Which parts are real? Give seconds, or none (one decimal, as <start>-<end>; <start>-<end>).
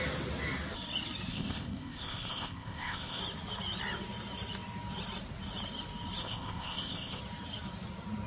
0.0-1.3; 3.2-6.2; 7.2-8.3